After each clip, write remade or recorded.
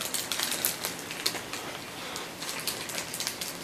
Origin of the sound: recorded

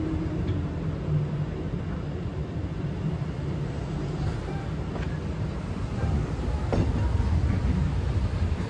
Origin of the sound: recorded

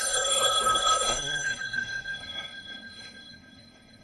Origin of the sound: remade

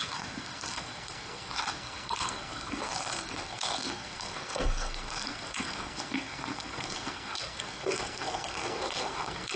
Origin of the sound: remade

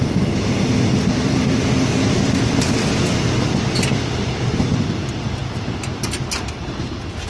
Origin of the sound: recorded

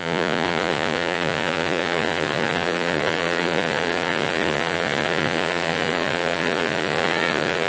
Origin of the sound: remade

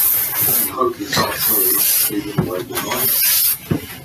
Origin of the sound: recorded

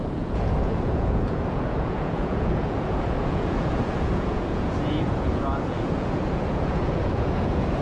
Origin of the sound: remade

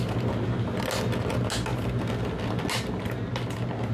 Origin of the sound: recorded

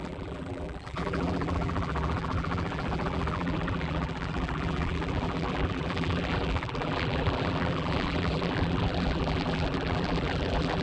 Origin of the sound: remade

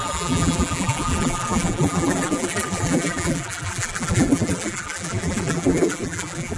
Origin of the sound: remade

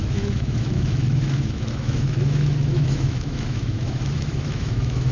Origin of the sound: remade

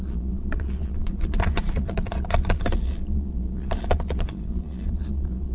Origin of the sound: remade